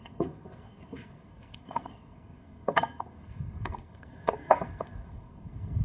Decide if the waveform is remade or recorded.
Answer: remade